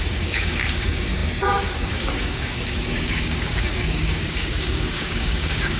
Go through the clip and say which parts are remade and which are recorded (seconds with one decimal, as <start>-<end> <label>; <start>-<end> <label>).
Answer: 0.0-5.8 remade

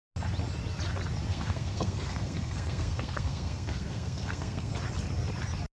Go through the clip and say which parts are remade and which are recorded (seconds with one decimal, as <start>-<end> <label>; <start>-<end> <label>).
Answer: 0.0-1.3 recorded; 1.3-4.7 remade; 4.7-5.7 recorded

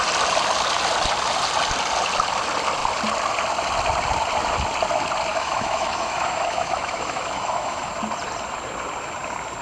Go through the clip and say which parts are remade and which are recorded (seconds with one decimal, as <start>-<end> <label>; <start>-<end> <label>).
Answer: 0.0-5.3 recorded; 5.3-7.9 remade; 7.9-9.6 recorded

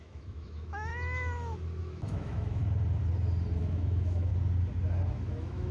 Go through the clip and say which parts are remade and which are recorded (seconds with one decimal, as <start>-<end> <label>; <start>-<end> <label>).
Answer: 0.0-0.9 remade; 0.9-1.8 recorded; 1.8-2.6 remade; 2.6-3.6 recorded; 3.6-4.3 remade; 4.3-5.1 recorded; 5.1-5.7 remade

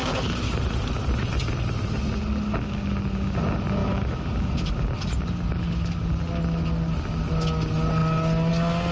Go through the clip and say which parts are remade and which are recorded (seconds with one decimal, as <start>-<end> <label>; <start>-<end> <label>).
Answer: 0.0-2.0 remade; 2.0-3.8 recorded; 3.8-4.9 remade; 4.9-8.9 recorded